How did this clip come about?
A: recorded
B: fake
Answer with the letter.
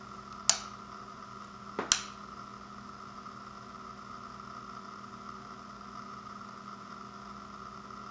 A